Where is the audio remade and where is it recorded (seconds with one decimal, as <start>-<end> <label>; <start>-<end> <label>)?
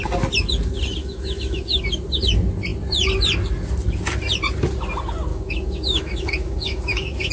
0.0-1.0 recorded; 1.0-1.8 remade; 1.8-5.3 recorded; 5.3-7.3 remade